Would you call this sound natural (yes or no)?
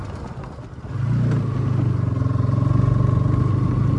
yes